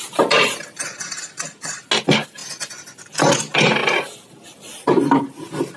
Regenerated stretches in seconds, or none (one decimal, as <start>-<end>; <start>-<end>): none